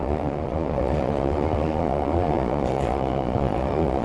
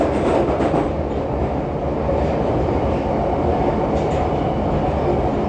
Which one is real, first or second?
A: second